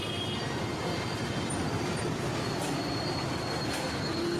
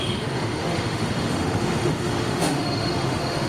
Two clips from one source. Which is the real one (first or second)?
first